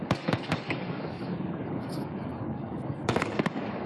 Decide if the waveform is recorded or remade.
remade